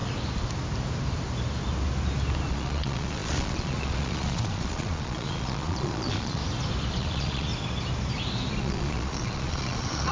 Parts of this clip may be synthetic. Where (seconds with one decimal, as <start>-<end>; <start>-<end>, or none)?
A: 2.5-6.4; 7.0-7.5; 8.6-10.1